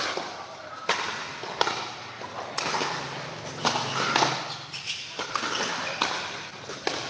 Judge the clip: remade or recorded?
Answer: recorded